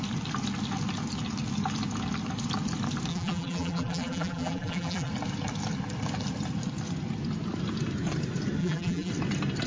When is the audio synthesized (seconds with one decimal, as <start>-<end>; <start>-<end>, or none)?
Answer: 3.1-5.1; 8.6-9.1